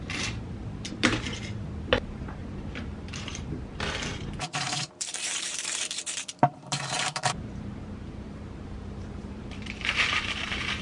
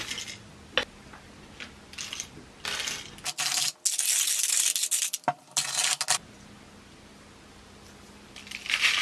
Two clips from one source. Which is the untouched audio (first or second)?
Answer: second